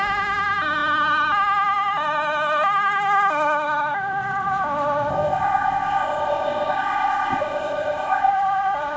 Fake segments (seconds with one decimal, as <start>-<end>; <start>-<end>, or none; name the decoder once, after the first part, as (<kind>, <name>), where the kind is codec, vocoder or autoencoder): 5.1-8.3 (codec, ZipCodec)